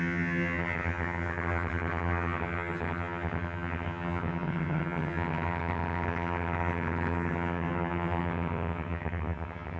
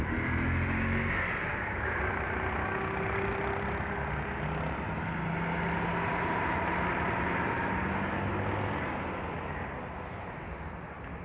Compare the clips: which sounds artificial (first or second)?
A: first